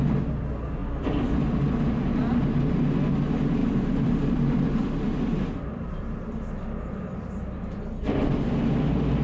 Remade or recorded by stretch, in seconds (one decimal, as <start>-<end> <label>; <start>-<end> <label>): 0.0-3.6 recorded; 3.6-7.8 remade; 7.8-9.2 recorded